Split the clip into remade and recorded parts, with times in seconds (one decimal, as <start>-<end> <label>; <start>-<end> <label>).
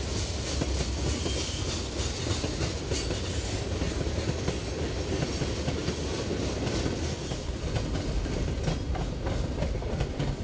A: 0.0-5.8 recorded; 5.8-9.6 remade; 9.6-10.4 recorded